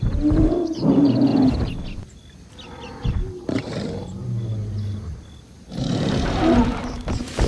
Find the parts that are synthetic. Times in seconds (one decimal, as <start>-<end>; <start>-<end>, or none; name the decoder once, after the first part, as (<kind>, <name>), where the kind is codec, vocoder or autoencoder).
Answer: 0.0-1.3 (vocoder, BigVGAN v2); 5.8-7.5